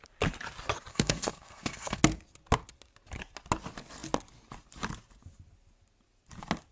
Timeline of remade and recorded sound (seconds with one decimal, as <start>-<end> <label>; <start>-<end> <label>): 0.0-0.9 recorded; 0.9-2.0 remade; 2.0-6.7 recorded